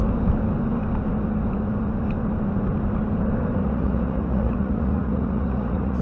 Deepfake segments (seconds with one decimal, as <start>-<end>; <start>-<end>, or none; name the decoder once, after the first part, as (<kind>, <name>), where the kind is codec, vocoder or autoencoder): 3.6-6.0 (vocoder, Vocos)